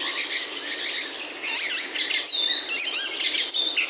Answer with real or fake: real